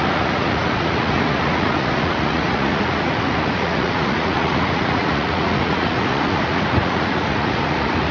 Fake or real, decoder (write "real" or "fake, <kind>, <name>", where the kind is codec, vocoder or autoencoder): fake, vocoder, Vocos